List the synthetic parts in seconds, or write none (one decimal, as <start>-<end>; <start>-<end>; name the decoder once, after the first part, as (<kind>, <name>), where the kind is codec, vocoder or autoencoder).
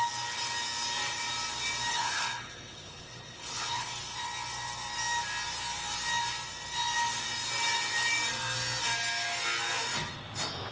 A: 1.9-3.9 (codec, HILCodec)